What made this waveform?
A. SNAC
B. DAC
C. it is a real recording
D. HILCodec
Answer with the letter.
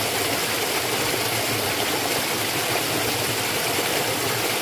C